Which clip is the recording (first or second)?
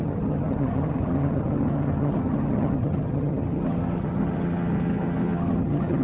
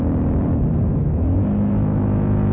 second